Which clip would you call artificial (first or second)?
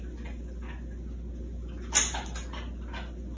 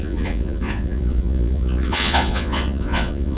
second